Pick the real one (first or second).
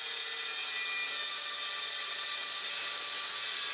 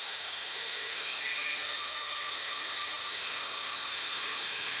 first